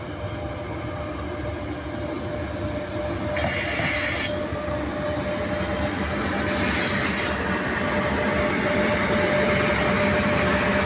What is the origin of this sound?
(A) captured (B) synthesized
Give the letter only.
A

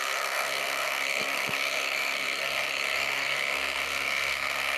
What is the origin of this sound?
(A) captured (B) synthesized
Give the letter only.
B